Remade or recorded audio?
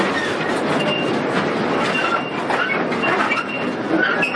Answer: recorded